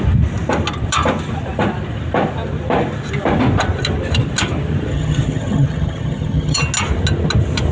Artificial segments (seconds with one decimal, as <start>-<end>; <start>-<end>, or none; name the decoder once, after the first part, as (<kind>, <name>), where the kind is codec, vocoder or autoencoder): 4.9-6.6 (vocoder, HiFi-GAN)